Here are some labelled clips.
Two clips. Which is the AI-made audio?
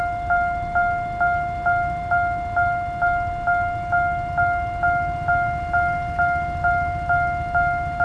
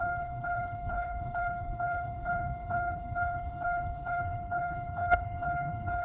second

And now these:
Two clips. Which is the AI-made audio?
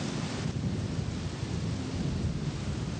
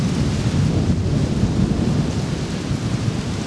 second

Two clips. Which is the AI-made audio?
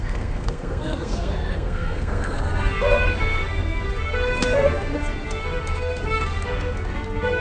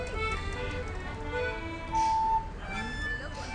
first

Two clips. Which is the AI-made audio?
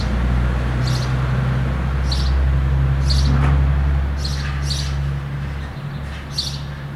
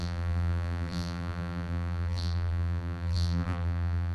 second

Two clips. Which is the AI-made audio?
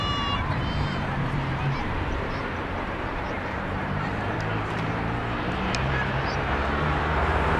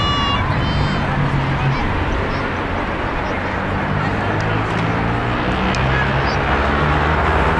first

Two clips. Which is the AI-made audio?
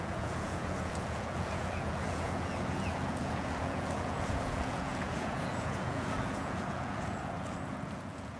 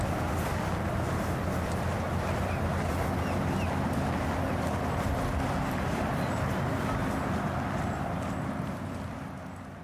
first